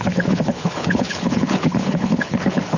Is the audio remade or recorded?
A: remade